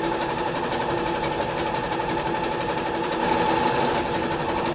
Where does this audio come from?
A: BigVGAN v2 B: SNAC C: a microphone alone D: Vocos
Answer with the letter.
A